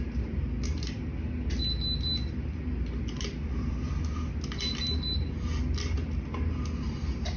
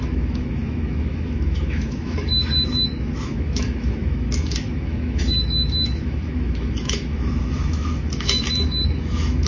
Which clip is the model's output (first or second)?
second